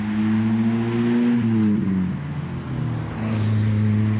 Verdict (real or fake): real